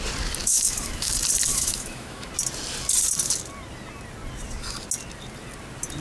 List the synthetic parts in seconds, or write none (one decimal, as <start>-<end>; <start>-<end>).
0.4-1.1; 1.5-2.3